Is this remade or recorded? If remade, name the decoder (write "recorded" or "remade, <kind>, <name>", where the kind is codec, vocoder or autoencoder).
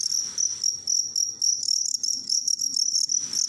recorded